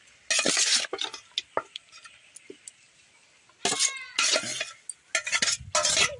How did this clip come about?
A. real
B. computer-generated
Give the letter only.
A